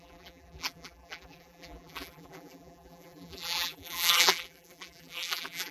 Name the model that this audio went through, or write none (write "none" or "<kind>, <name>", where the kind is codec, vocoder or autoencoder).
vocoder, BigVGAN v2